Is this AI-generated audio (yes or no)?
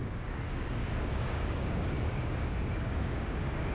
yes